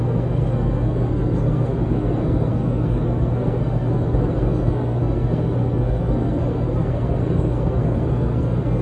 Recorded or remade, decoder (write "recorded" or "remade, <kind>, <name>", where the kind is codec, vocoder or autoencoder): remade, codec, SNAC